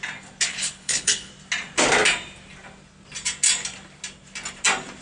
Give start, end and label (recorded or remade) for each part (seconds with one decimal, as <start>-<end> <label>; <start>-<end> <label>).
0.0-0.5 recorded; 0.5-1.3 remade; 1.3-5.0 recorded